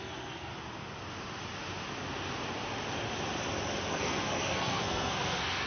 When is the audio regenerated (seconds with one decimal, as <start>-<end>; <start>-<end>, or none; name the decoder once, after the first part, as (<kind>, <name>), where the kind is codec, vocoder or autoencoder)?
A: 0.0-0.5 (codec, SNAC); 3.9-5.7